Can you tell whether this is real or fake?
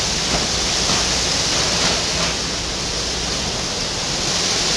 real